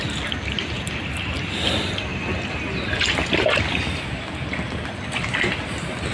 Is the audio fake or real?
real